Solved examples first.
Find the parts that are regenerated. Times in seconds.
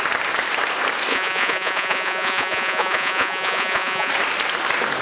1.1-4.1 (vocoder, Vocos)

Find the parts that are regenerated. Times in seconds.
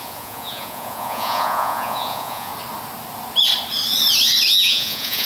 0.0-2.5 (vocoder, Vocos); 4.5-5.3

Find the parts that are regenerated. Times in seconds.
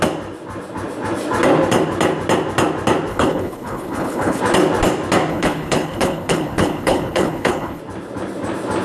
3.1-4.4 (codec, HILCodec); 5.3-7.8